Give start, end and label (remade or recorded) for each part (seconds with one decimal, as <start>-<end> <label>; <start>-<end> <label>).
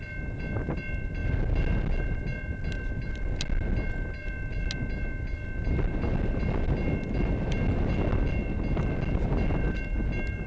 0.0-10.5 recorded